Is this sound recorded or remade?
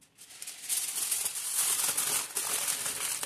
recorded